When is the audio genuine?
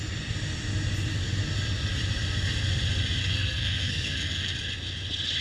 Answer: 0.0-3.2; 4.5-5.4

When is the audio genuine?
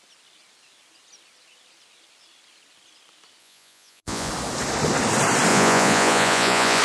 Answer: 0.0-3.4; 4.3-5.5